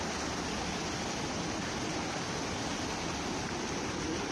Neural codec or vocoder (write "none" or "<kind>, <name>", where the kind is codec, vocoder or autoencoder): none